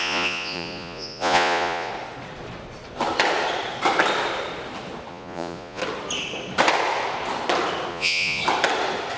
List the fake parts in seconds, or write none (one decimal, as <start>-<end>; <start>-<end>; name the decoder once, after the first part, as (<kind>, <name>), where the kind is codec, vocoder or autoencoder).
0.0-1.9 (vocoder, Vocos); 5.1-5.8; 7.9-8.4